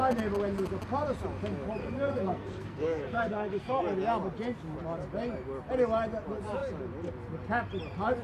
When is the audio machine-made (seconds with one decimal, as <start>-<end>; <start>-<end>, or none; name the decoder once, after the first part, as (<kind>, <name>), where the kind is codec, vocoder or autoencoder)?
1.8-3.8 (codec, SNAC)